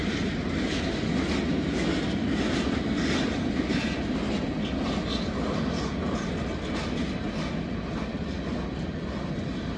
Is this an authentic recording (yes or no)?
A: yes